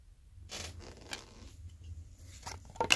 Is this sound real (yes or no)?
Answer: yes